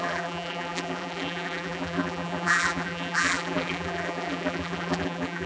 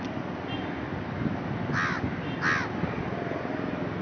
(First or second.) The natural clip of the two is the second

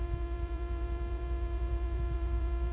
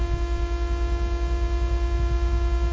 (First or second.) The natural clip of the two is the second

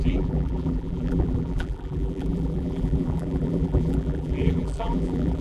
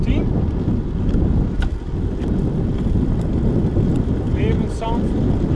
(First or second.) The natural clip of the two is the second